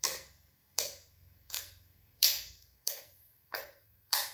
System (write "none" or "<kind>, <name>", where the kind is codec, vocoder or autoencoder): codec, SNAC